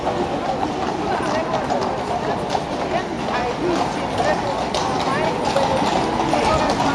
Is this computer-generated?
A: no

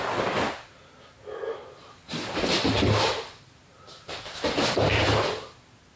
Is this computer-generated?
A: no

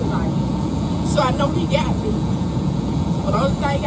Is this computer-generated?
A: yes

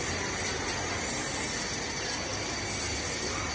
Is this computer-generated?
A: no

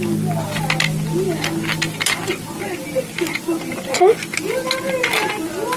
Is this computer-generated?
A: no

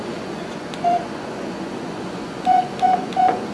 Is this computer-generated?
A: yes